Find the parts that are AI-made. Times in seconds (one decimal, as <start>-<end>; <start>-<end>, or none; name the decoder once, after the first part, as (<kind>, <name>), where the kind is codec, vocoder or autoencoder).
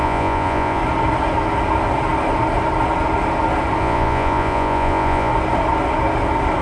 0.0-0.8 (vocoder, Vocos); 3.8-5.3